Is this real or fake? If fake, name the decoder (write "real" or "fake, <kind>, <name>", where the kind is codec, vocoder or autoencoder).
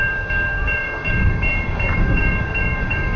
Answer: fake, codec, DAC